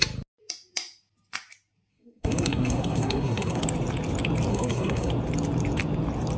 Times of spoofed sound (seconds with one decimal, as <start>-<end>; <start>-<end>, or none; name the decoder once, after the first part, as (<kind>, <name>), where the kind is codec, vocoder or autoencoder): 1.9-3.6 (codec, SNAC); 4.5-5.1